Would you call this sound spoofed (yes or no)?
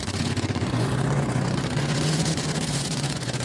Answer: yes